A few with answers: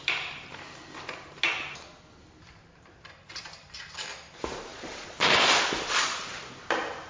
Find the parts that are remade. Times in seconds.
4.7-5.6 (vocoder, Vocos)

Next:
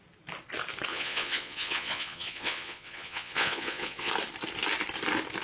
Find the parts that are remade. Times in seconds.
0.9-4.1 (vocoder, Vocos)

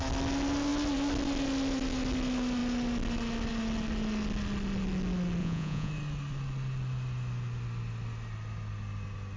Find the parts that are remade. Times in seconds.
5.4-5.9 (vocoder, Vocos)

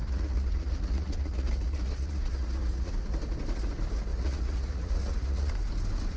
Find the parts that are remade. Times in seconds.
0.0-2.9 (vocoder, Vocos); 4.1-5.5

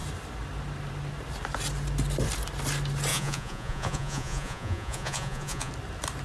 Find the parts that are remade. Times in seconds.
3.1-5.7 (vocoder, Vocos)

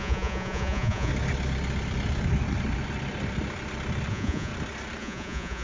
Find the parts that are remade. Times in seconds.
0.0-1.1 (vocoder, Vocos); 4.1-4.5; 5.0-5.6

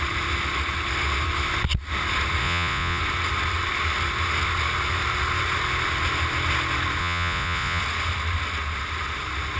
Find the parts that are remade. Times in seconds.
2.4-3.0 (vocoder, Vocos); 7.0-7.8

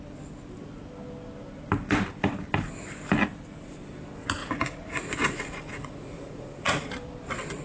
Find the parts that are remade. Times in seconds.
4.4-6.9 (vocoder, Vocos)